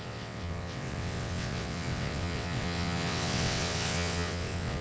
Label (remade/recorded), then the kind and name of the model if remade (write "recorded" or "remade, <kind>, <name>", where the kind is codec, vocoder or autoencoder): remade, vocoder, WaveNeXt